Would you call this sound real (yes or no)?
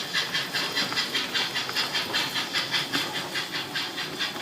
yes